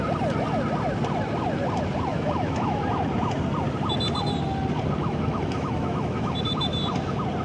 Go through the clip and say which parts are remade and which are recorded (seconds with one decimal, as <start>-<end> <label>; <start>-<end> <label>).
0.0-2.1 recorded; 2.1-2.8 remade; 2.8-5.0 recorded; 5.0-6.3 remade; 6.3-7.4 recorded